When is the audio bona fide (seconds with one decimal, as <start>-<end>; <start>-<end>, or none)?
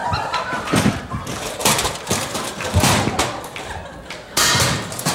1.1-1.6